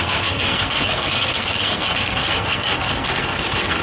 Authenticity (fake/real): fake